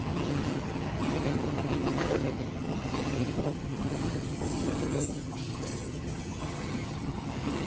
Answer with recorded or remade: remade